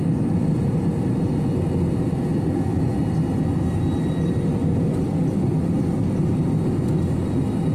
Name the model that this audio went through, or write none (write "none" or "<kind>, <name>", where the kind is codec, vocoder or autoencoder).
none